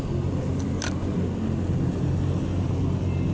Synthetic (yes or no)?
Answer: no